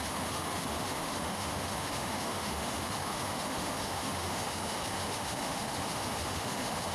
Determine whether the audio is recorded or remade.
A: remade